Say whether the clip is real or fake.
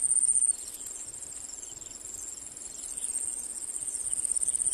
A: real